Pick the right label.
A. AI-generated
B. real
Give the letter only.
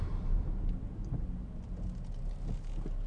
B